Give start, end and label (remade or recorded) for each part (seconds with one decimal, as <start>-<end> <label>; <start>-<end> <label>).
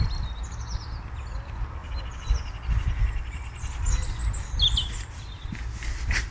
0.0-1.8 recorded; 1.8-2.7 remade; 2.7-4.2 recorded; 4.2-5.5 remade; 5.5-6.3 recorded